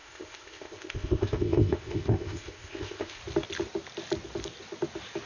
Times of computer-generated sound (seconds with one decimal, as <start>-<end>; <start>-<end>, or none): 0.0-3.2